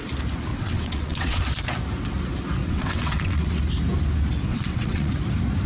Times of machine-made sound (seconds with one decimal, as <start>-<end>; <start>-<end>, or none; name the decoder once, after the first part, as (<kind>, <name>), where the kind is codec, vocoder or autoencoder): 0.5-1.4 (vocoder, WaveNeXt); 2.6-3.6; 4.5-5.1